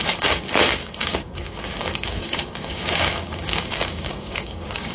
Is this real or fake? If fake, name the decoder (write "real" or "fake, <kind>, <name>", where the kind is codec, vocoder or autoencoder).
fake, codec, DAC